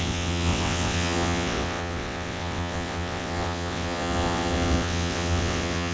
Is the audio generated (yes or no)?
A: yes